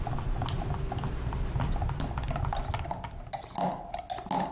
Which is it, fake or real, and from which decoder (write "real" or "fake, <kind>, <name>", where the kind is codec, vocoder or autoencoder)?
real